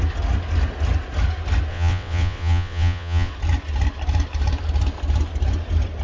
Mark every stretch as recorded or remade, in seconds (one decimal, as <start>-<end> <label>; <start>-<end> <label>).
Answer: 0.0-1.7 recorded; 1.7-3.3 remade; 3.3-6.0 recorded